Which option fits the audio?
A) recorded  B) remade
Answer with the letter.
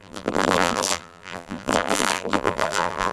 B